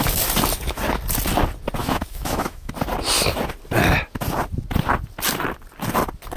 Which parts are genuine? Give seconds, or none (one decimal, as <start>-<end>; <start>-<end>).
0.0-1.8; 2.7-6.4